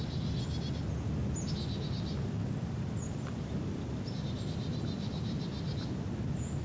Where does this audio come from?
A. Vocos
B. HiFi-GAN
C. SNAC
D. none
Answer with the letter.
D